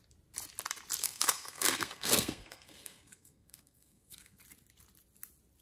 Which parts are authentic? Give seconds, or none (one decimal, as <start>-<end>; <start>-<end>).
0.0-1.0; 4.4-5.6